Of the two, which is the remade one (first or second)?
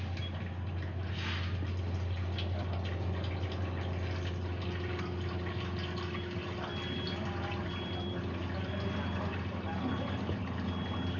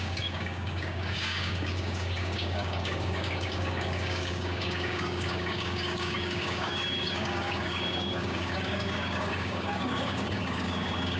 second